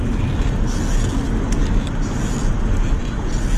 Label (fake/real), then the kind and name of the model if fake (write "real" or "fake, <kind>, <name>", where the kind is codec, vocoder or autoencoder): real